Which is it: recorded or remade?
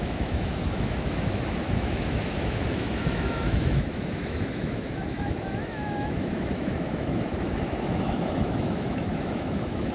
remade